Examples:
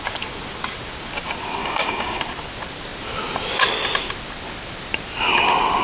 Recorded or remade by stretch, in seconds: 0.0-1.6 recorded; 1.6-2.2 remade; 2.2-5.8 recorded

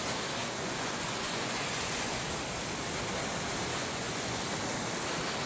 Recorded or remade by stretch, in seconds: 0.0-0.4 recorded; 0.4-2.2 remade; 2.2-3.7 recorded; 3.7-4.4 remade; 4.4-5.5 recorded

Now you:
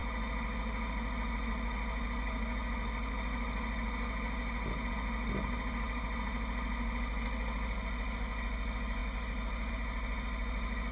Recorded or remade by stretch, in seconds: 0.0-10.9 recorded

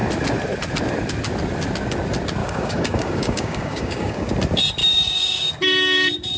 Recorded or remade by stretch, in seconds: 0.0-2.4 recorded; 2.4-4.3 remade; 4.3-4.8 recorded; 4.8-5.5 remade; 5.5-6.4 recorded

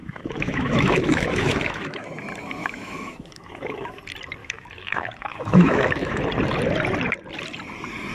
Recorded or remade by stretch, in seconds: 0.0-2.1 remade; 2.1-2.6 recorded; 2.6-4.0 remade; 4.0-4.4 recorded; 4.4-6.2 remade; 6.2-8.1 recorded